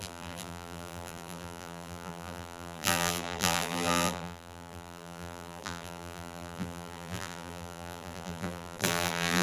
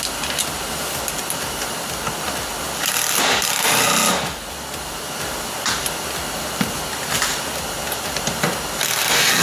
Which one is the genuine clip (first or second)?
second